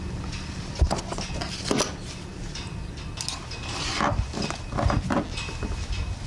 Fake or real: real